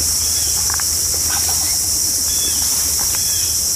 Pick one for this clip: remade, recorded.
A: recorded